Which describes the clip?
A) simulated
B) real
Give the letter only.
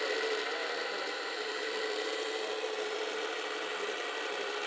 A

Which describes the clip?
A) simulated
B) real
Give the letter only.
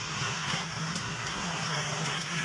A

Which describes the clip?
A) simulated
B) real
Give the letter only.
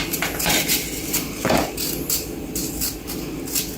B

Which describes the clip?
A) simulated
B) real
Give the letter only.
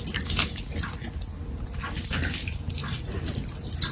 B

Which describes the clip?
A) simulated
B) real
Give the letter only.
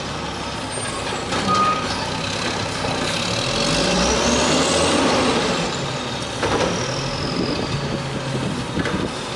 B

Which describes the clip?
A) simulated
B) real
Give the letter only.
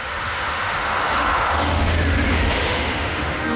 A